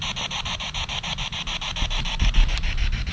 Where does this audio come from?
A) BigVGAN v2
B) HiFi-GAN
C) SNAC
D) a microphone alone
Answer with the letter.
A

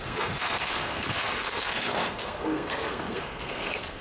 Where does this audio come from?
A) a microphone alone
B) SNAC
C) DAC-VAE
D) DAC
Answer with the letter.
B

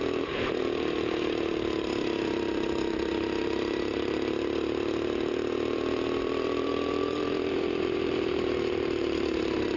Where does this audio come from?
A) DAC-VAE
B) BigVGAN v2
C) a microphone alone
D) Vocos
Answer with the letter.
B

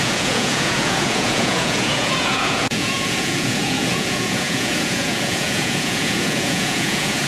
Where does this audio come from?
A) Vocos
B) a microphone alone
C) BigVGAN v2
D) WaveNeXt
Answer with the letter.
A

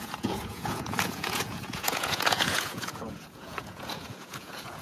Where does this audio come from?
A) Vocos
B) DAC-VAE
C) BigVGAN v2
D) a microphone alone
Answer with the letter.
A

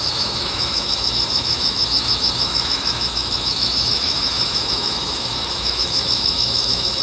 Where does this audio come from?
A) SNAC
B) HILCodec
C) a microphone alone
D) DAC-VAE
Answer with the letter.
D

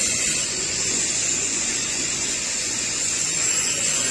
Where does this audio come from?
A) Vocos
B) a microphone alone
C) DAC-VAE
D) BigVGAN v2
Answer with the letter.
A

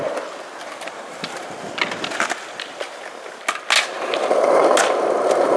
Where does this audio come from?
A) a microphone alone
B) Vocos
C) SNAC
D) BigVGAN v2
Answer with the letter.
A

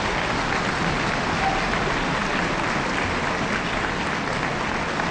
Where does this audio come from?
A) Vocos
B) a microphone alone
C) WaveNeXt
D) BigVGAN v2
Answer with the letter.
B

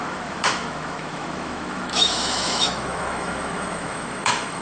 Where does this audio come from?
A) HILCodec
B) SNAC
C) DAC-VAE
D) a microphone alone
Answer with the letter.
C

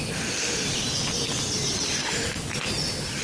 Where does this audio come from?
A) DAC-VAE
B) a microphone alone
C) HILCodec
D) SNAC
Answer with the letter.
B